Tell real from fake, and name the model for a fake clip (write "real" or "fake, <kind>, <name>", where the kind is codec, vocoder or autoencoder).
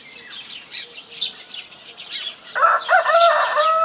real